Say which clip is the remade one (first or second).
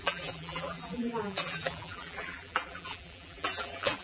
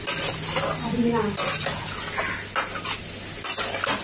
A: first